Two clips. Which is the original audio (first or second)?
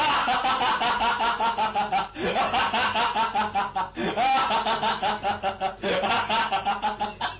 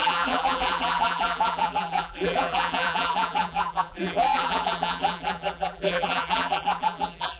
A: first